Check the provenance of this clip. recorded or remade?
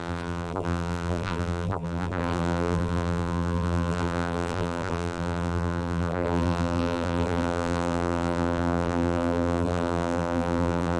remade